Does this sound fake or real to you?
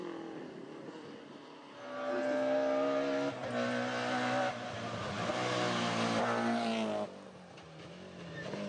real